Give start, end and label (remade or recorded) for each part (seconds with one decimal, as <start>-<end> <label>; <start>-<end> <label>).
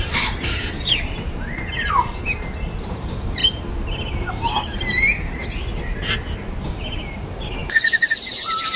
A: 0.0-2.0 remade; 2.0-2.8 recorded; 2.8-3.4 remade; 3.4-4.3 recorded; 4.3-5.4 remade; 5.4-6.7 recorded; 6.7-8.8 remade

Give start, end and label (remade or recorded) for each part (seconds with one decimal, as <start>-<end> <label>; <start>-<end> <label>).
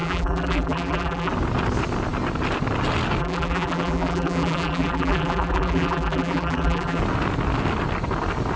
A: 0.0-1.3 remade; 1.3-3.2 recorded; 3.2-7.0 remade; 7.0-8.6 recorded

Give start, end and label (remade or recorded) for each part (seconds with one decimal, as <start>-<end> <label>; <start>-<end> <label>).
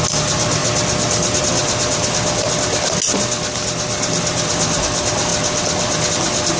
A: 0.0-0.6 recorded; 0.6-1.4 remade; 1.4-6.6 recorded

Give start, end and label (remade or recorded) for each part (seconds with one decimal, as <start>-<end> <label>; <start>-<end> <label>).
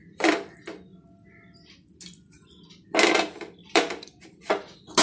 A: 0.0-3.6 recorded; 3.6-4.4 remade; 4.4-5.0 recorded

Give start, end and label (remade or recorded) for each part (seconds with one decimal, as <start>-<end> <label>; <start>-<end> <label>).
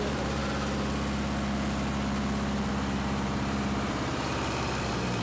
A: 0.0-0.4 remade; 0.4-2.7 recorded; 2.7-5.2 remade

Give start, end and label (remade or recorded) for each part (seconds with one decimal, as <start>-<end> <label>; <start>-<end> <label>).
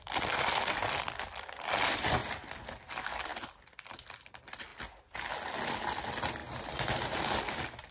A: 0.0-2.2 remade; 2.2-2.9 recorded; 2.9-4.7 remade; 4.7-5.7 recorded; 5.7-6.4 remade; 6.4-7.9 recorded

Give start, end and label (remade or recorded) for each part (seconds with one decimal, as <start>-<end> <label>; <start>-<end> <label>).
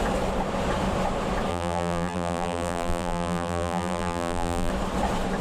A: 0.0-1.5 recorded; 1.5-4.7 remade; 4.7-5.4 recorded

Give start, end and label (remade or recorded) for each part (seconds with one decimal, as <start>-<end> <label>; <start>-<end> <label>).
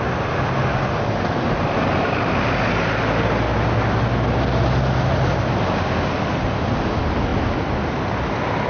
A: 0.0-8.7 recorded